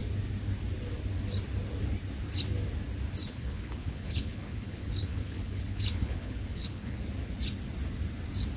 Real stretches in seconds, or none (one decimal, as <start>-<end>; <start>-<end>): 0.0-3.2; 7.0-8.6